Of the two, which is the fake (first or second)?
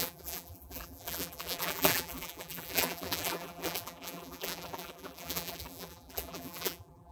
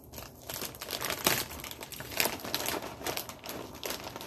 first